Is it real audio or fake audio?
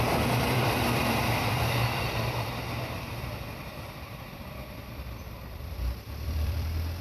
fake